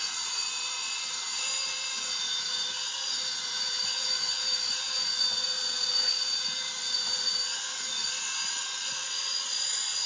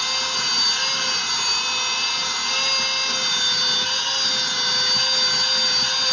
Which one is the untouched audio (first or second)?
second